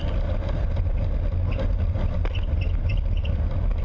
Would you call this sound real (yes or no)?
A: yes